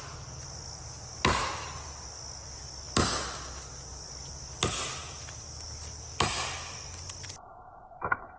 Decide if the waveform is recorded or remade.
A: recorded